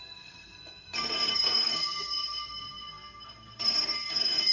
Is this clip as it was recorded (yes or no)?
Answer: no